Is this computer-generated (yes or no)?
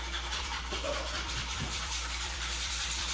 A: yes